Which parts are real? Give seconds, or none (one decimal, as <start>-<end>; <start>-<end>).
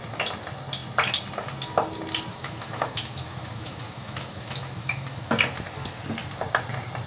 0.0-2.3; 5.3-7.1